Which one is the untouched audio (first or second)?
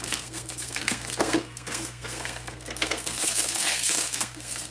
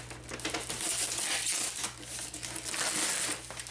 second